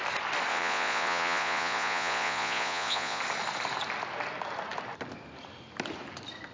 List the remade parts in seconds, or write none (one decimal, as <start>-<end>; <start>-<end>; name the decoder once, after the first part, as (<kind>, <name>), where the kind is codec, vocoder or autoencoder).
0.5-3.2 (vocoder, Vocos)